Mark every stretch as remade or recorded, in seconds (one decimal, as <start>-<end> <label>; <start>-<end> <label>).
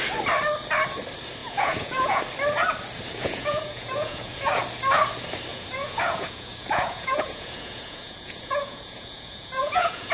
0.0-1.4 recorded; 1.4-2.2 remade; 2.2-3.2 recorded; 3.2-4.5 remade; 4.5-5.5 recorded; 5.5-10.1 remade